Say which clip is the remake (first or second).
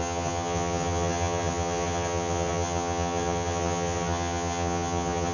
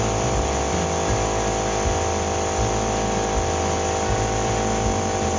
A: first